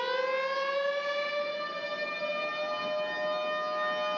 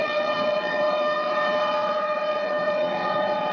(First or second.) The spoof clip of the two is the second